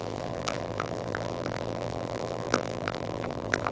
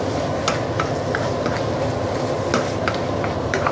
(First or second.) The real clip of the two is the second